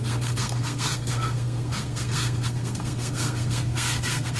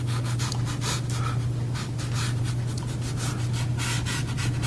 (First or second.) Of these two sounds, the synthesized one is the first